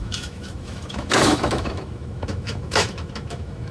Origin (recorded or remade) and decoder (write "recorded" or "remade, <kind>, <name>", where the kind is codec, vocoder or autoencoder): remade, autoencoder, DAC-VAE